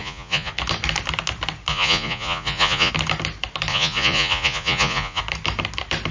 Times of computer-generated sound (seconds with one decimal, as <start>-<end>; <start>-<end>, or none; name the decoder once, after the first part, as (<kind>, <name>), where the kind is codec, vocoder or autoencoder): 0.0-0.5 (vocoder, Vocos); 1.7-2.9; 3.7-5.2

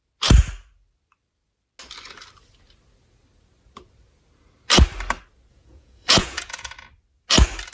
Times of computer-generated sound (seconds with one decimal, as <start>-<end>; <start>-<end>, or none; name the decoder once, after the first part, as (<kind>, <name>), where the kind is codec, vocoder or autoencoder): 5.5-6.7 (vocoder, Vocos)

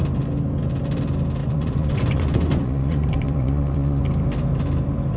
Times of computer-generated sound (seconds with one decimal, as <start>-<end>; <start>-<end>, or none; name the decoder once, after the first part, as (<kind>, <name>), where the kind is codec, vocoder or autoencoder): 1.4-4.0 (vocoder, Vocos)